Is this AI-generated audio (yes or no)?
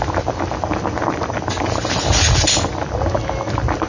no